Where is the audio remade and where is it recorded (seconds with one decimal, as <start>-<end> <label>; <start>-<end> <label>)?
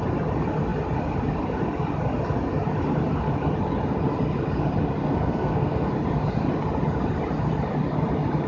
0.0-5.0 recorded; 5.0-5.9 remade; 5.9-8.5 recorded